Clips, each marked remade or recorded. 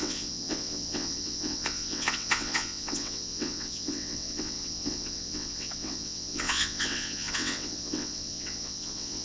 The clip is remade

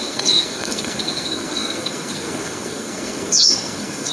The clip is remade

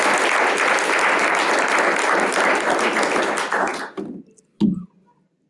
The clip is recorded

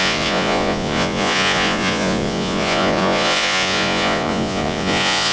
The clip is remade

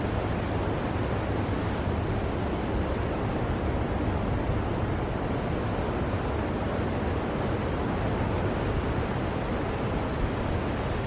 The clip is recorded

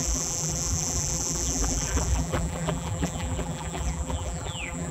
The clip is remade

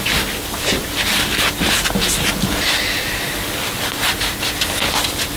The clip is recorded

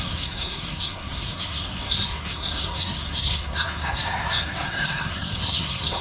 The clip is remade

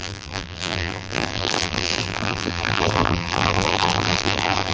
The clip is remade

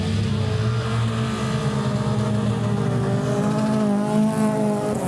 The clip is recorded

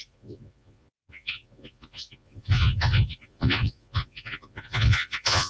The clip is remade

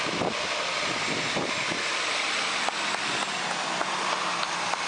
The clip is recorded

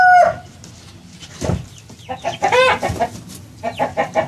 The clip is recorded